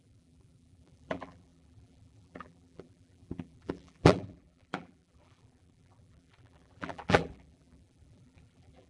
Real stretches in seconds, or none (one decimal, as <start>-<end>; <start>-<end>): none